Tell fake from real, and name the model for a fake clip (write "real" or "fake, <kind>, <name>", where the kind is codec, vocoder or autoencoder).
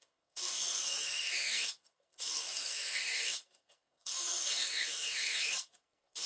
fake, codec, SNAC